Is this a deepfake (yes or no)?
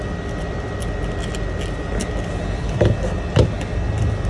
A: no